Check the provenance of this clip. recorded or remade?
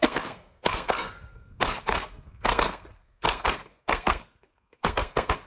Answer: remade